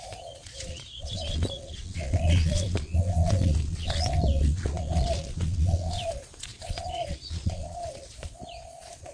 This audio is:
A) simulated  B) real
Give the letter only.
A